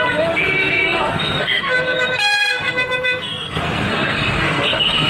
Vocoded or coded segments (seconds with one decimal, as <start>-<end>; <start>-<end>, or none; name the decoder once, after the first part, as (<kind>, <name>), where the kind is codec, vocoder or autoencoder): 0.0-5.1 (codec, SNAC)